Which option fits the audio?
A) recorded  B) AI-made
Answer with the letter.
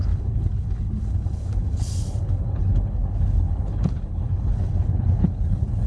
B